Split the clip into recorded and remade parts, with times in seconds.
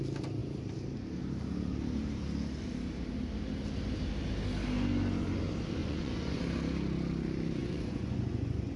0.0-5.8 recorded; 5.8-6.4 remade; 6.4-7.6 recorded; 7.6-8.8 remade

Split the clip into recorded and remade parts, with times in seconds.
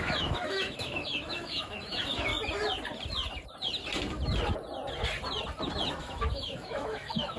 0.0-2.3 remade; 2.3-6.0 recorded; 6.0-7.4 remade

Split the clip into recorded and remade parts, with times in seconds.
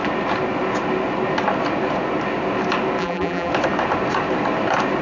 0.0-3.0 recorded; 3.0-3.5 remade; 3.5-5.0 recorded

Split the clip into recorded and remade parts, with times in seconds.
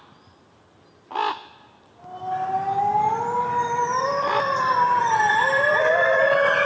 0.0-4.0 recorded; 4.0-6.2 remade; 6.2-6.7 recorded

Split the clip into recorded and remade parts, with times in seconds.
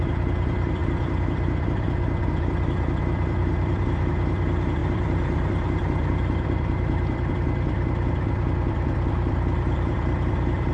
0.0-10.7 remade